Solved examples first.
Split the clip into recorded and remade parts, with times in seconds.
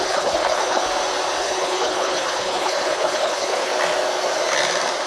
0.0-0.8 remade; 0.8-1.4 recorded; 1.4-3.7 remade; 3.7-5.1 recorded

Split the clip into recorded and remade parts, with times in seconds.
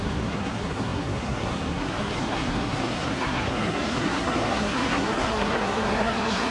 0.0-6.5 remade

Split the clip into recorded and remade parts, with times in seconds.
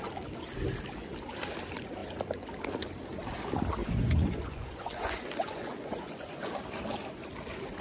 0.0-3.8 recorded; 3.8-6.5 remade; 6.5-7.8 recorded